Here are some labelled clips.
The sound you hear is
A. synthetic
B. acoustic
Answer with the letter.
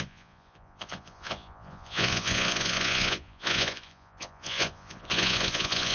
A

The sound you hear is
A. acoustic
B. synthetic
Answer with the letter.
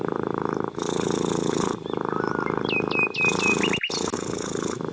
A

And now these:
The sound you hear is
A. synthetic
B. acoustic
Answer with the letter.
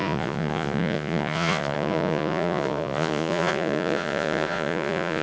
A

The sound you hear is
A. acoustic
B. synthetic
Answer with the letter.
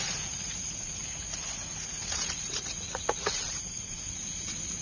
B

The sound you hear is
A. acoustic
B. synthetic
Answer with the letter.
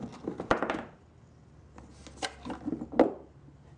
A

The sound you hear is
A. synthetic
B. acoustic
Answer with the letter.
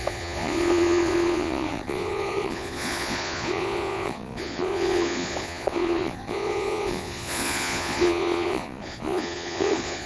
A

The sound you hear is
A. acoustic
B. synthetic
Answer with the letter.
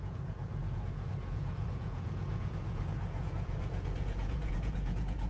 B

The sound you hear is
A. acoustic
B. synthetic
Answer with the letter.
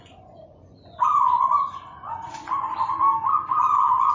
B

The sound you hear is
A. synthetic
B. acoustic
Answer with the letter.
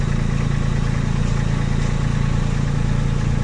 B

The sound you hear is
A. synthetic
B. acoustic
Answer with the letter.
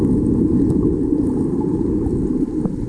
B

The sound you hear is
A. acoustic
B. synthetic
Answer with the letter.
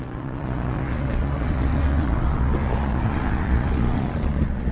B